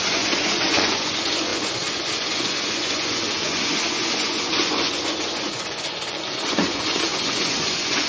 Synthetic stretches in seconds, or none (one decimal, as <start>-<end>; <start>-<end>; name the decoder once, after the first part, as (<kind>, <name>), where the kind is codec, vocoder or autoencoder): 0.0-8.1 (vocoder, Vocos)